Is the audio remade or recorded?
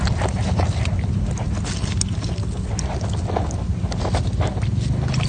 recorded